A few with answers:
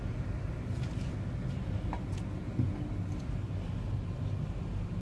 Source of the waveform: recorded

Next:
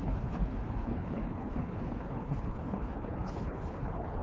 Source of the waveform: remade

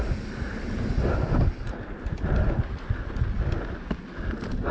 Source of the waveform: recorded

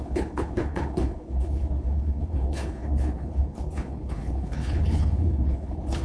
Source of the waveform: remade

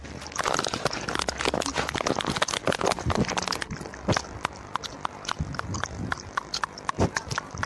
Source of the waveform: recorded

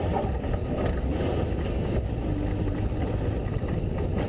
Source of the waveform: recorded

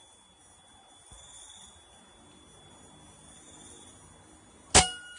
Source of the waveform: recorded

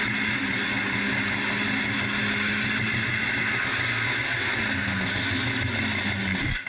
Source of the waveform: recorded